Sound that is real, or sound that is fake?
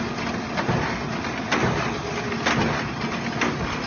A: real